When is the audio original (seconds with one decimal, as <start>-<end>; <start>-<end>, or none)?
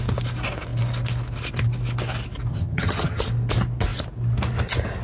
0.0-2.5; 3.2-5.0